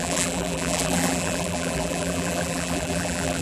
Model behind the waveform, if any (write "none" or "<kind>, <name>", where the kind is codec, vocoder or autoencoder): vocoder, BigVGAN v2